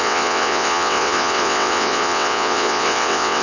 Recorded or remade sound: remade